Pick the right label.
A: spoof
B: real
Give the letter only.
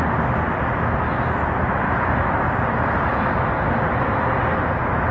B